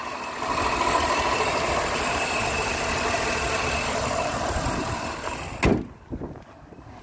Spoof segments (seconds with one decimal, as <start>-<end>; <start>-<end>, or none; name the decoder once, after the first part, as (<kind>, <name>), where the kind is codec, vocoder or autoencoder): none